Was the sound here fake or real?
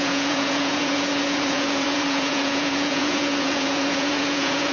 fake